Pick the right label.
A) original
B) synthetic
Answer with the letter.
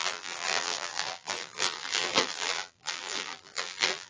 B